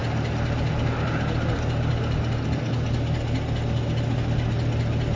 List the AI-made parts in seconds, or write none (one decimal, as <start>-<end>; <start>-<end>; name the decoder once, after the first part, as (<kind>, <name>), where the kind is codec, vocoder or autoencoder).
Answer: none

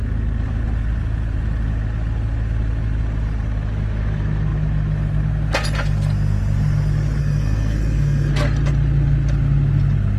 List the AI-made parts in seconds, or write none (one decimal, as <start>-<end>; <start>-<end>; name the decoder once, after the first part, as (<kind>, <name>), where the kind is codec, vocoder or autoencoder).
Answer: 7.2-8.3 (codec, SNAC)

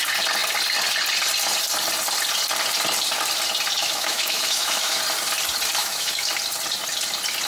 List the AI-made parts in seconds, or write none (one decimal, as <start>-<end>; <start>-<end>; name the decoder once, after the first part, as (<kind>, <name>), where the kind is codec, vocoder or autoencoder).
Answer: 3.8-5.0 (autoencoder, DAC-VAE); 5.8-6.3

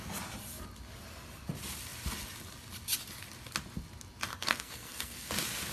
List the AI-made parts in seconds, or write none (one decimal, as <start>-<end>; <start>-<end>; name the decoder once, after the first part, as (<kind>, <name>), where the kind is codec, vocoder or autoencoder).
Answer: 4.3-5.3 (codec, SNAC)

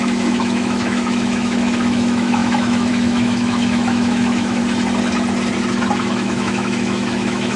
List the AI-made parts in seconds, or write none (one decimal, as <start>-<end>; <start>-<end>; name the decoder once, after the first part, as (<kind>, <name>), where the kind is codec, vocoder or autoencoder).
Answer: 0.0-4.6 (autoencoder, DAC-VAE); 6.0-7.6

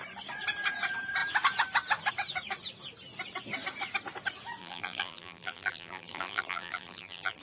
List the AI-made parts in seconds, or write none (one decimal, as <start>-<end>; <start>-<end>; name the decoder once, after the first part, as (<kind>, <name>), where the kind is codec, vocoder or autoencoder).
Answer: 4.6-7.4 (vocoder, BigVGAN v2)

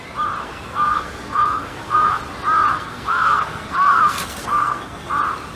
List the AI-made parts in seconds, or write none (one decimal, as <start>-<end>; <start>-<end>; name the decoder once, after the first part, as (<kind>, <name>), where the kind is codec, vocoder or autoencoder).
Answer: 0.4-2.2 (codec, SNAC); 2.7-5.1